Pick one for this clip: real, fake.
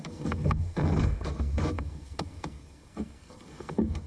fake